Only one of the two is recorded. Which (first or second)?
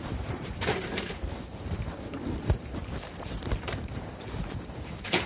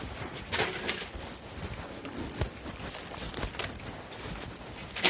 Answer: second